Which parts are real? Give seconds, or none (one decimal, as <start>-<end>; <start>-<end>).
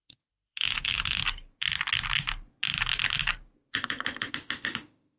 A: 1.2-4.3